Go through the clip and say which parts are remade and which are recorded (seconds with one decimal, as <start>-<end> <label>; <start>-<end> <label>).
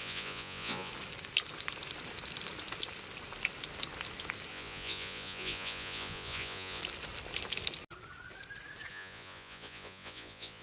0.0-0.9 remade; 0.9-4.5 recorded; 4.5-6.8 remade; 6.8-8.9 recorded; 8.9-10.6 remade